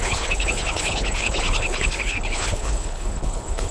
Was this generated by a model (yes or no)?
yes